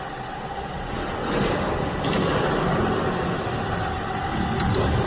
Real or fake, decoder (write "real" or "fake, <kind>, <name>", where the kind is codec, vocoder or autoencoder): real